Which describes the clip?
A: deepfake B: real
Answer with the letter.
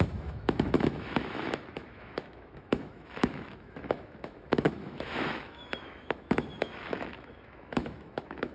A